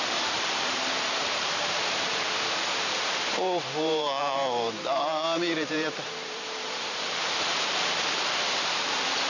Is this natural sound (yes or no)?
no